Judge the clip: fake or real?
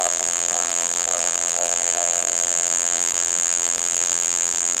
fake